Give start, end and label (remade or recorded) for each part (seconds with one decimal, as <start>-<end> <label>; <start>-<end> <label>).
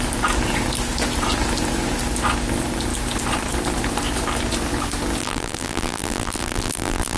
0.0-5.2 recorded; 5.2-7.2 remade